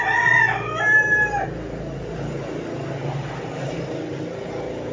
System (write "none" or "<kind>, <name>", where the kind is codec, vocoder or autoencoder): none